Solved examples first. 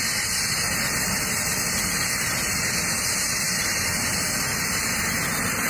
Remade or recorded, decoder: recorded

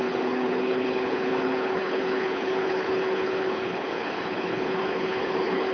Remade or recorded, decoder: remade, codec, HILCodec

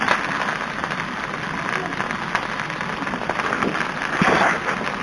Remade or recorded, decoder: recorded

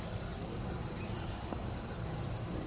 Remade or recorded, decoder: recorded